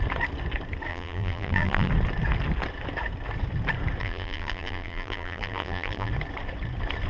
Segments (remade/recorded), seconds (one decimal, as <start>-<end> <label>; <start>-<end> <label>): 0.0-0.9 recorded; 0.9-1.9 remade; 1.9-4.0 recorded; 4.0-6.1 remade; 6.1-7.1 recorded